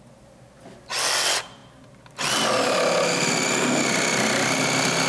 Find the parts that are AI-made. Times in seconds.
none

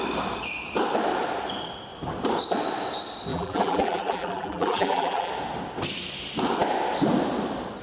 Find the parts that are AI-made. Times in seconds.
3.3-5.3 (vocoder, BigVGAN v2)

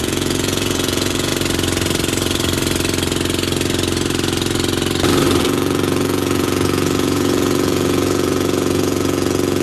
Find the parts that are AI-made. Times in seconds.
0.0-1.3 (vocoder, Vocos); 5.4-9.6

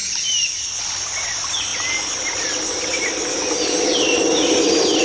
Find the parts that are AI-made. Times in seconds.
none